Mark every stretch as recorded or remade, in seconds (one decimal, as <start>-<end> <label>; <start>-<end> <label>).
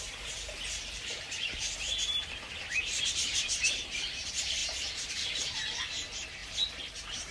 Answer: 0.0-4.6 remade; 4.6-5.1 recorded; 5.1-7.3 remade